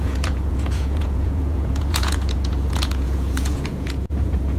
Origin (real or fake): fake